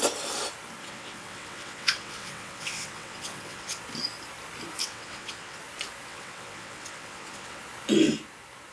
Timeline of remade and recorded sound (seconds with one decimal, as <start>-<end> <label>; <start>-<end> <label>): 0.0-0.8 recorded; 0.8-3.8 remade; 3.8-4.8 recorded; 4.8-5.6 remade; 5.6-6.1 recorded; 6.1-7.6 remade; 7.6-8.7 recorded